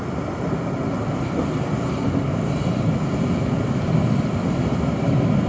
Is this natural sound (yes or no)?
yes